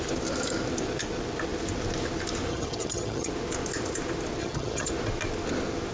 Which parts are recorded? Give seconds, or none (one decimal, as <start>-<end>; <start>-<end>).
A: 0.0-2.5; 3.3-4.4; 4.9-5.9